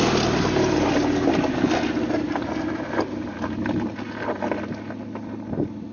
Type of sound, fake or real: real